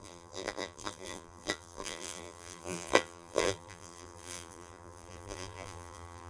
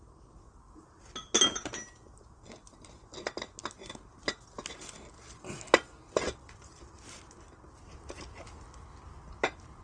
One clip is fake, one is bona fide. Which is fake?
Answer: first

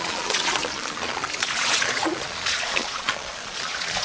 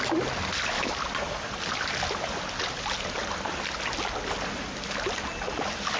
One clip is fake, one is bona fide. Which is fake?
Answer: first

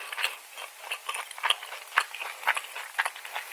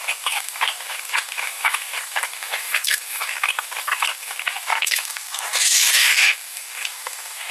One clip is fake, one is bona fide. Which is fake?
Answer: second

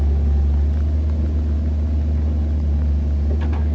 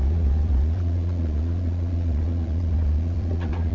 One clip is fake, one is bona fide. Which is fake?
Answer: second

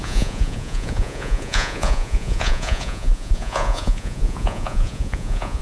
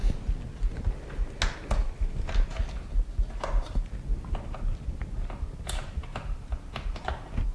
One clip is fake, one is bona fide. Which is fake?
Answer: first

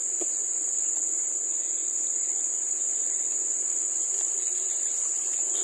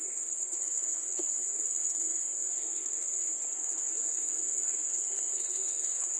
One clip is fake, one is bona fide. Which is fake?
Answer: second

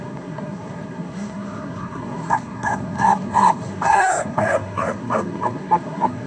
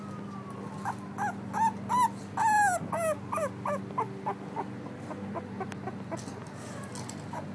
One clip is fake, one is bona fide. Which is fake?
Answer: first